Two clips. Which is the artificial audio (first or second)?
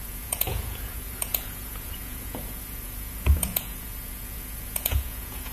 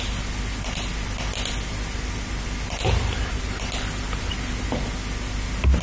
first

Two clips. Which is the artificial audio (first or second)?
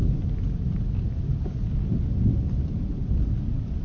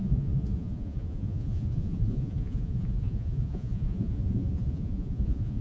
second